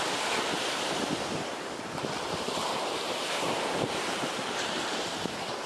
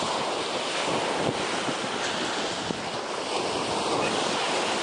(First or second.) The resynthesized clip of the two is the first